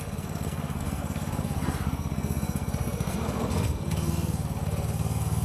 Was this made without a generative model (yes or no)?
no